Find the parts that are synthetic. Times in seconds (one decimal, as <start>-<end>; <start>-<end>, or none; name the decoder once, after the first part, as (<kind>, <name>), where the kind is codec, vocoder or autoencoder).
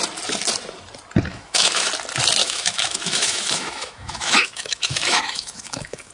1.3-1.9 (autoencoder, DAC-VAE); 2.4-6.1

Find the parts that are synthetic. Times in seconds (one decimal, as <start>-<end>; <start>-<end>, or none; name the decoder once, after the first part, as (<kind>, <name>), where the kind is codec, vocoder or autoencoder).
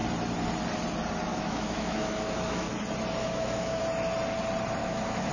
1.3-2.7 (autoencoder, DAC-VAE); 3.2-3.8; 4.8-5.3